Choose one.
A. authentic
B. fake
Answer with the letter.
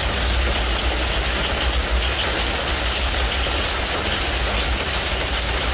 A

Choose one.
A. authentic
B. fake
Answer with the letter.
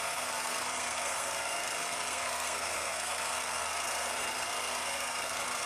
B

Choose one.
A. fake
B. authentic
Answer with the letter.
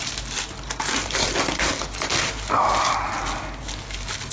B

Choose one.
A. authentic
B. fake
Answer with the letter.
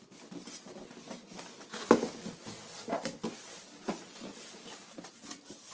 A